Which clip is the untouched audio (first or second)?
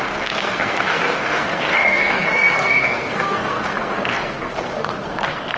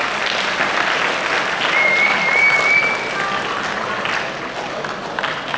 second